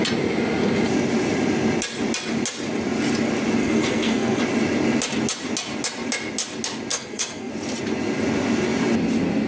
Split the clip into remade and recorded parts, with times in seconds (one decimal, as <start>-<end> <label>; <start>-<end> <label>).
0.0-3.6 recorded; 3.6-4.4 remade; 4.4-6.9 recorded; 6.9-7.5 remade; 7.5-9.5 recorded